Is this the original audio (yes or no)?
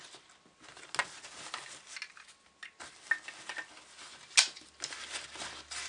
yes